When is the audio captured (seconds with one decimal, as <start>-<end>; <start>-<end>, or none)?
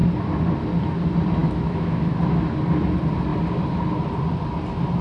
0.0-1.4; 2.2-5.0